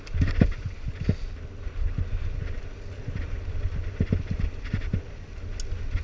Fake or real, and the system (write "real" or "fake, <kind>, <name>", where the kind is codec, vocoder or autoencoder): real